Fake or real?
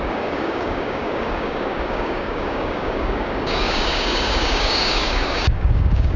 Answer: fake